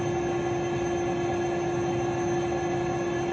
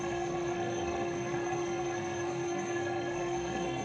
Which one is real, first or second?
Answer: first